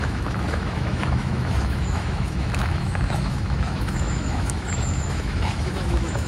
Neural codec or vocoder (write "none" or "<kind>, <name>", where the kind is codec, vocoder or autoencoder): autoencoder, DAC-VAE